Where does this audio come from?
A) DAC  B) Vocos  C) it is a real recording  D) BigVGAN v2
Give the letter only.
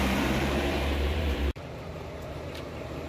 D